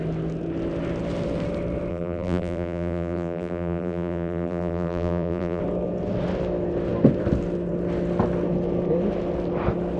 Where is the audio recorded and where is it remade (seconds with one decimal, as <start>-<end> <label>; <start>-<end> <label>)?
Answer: 0.0-1.9 recorded; 1.9-5.6 remade; 5.6-10.0 recorded